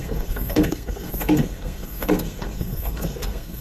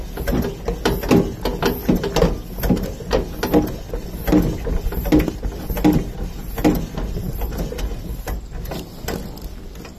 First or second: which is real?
second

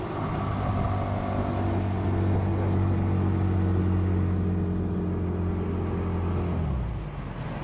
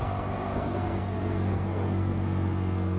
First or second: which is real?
first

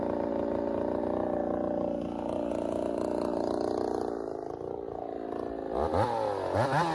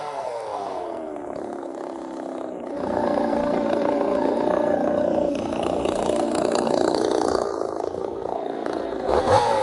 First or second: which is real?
first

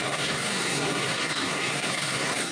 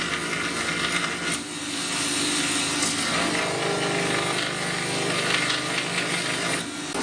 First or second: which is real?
second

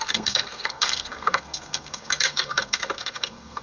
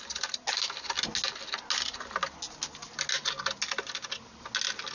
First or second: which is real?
second